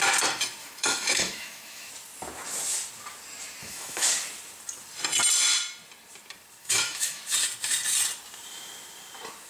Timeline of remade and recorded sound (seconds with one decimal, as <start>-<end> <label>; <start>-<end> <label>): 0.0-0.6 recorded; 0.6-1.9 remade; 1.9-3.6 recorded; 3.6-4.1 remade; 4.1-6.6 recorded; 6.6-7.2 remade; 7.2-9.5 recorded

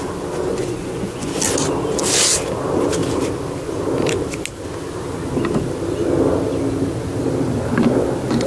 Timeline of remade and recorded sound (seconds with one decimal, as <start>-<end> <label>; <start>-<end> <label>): 0.0-0.5 recorded; 0.5-1.3 remade; 1.3-8.5 recorded

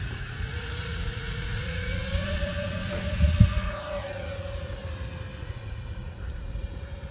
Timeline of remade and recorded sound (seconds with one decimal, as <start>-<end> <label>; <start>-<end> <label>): 0.0-4.8 remade; 4.8-5.4 recorded; 5.4-7.1 remade

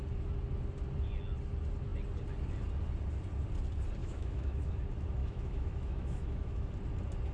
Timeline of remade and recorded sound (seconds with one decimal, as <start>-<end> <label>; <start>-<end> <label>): 0.0-4.0 recorded; 4.0-4.7 remade; 4.7-5.2 recorded; 5.2-6.7 remade; 6.7-7.3 recorded